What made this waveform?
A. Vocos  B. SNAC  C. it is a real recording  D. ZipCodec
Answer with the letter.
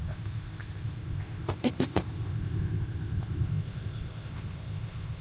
D